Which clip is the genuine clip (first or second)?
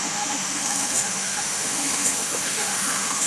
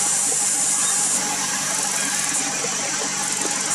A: second